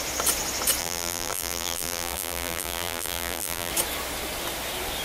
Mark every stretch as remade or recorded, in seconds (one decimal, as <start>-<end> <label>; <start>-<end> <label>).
0.0-0.8 recorded; 0.8-3.7 remade; 3.7-5.0 recorded